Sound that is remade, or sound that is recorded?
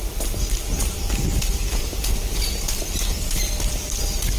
recorded